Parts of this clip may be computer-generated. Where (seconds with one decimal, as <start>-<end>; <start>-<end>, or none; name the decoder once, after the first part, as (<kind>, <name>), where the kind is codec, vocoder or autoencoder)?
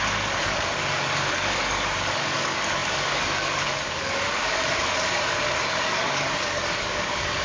0.0-7.4 (codec, DAC)